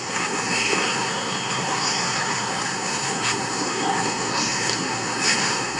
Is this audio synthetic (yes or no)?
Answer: yes